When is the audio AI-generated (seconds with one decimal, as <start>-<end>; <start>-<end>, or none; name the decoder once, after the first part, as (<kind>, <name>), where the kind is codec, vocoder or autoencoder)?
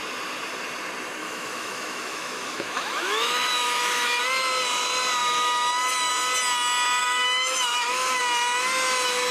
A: 1.2-4.2 (autoencoder, DAC-VAE); 5.2-6.1; 7.0-8.2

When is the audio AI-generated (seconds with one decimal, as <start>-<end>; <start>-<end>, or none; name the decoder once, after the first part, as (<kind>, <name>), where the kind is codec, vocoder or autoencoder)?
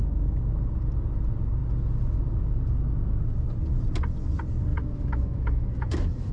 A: 4.7-6.3 (autoencoder, DAC-VAE)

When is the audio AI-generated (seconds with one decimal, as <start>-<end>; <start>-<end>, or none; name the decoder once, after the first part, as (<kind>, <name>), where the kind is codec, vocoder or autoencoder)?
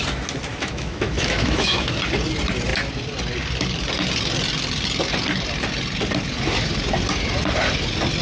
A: 0.5-1.9 (autoencoder, DAC-VAE)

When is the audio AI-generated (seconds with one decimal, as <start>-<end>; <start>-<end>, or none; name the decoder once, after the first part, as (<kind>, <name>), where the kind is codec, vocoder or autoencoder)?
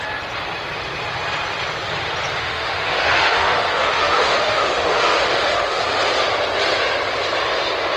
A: 2.4-5.8 (autoencoder, DAC-VAE)